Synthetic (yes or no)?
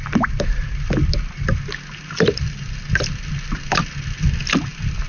no